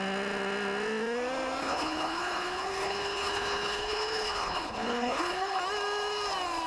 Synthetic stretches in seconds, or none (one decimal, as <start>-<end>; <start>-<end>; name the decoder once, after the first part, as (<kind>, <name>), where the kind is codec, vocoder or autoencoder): 1.6-5.6 (codec, HILCodec)